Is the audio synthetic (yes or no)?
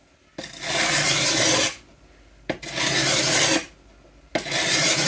no